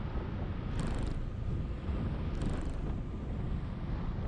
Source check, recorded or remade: recorded